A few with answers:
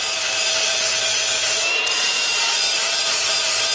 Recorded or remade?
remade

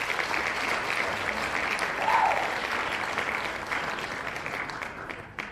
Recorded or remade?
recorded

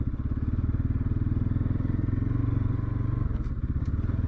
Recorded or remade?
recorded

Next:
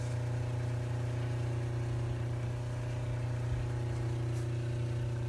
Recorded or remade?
recorded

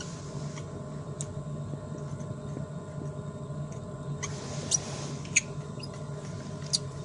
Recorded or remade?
recorded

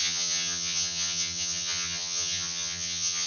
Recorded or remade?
remade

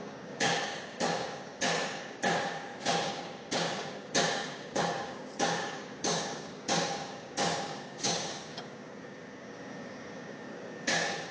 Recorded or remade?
remade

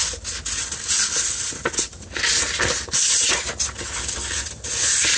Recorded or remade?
recorded